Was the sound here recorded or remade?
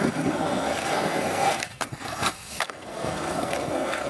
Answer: remade